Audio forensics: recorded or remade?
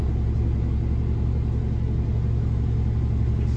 recorded